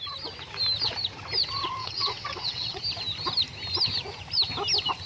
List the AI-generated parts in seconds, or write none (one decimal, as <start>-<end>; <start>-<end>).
1.8-2.8